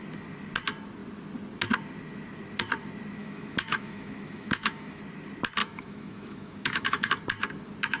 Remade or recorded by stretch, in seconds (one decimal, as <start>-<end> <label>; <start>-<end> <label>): 0.0-3.2 recorded; 3.2-5.0 remade; 5.0-5.6 recorded; 5.6-7.1 remade; 7.1-8.0 recorded